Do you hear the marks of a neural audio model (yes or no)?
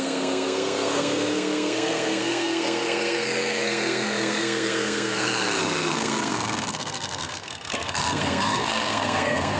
yes